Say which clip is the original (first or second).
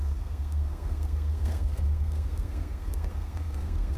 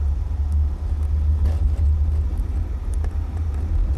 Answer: second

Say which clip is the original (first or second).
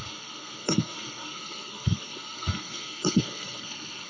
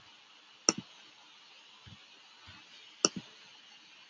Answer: second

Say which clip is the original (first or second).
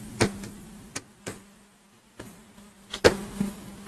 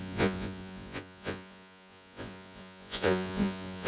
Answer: first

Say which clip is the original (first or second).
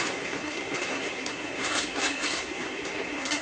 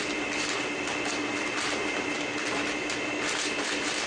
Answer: second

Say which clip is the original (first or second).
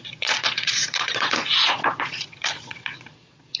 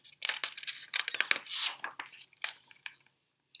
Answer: second